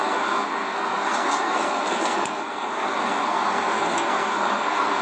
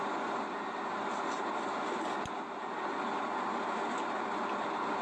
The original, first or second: second